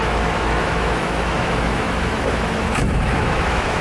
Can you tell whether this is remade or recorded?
remade